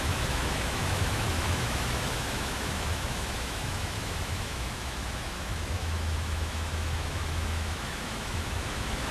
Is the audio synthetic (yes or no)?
yes